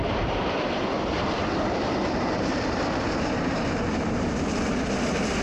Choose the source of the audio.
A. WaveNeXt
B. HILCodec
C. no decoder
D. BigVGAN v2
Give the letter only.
D